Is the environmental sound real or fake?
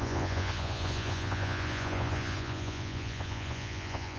fake